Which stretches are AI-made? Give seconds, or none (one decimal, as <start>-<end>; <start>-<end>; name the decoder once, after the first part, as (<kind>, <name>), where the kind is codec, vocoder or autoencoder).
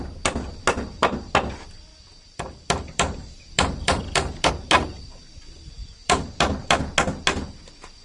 1.9-4.5 (vocoder, BigVGAN v2); 6.0-6.8